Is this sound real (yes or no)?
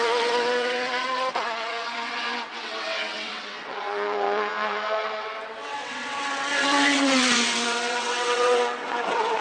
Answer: no